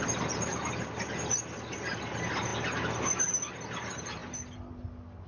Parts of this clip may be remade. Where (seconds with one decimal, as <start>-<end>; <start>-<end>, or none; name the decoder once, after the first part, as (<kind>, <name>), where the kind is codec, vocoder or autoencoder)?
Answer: none